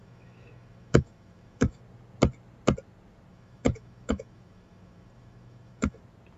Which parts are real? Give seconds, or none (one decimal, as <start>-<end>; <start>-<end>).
1.8-3.3; 6.0-6.4